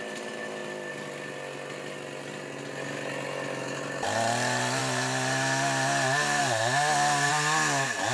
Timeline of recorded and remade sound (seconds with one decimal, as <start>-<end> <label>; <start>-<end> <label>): 0.0-8.1 recorded